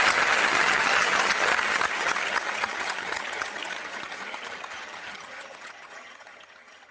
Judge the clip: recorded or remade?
remade